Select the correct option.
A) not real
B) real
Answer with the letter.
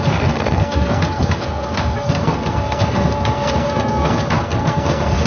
A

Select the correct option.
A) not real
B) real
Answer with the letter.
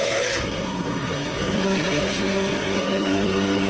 A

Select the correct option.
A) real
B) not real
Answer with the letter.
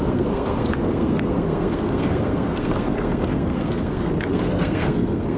B